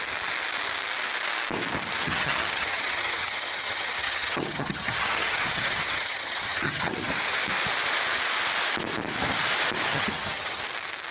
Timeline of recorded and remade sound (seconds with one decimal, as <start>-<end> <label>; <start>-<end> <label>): 0.0-2.0 recorded; 2.0-7.1 remade; 7.1-9.9 recorded; 9.9-10.6 remade; 10.6-11.1 recorded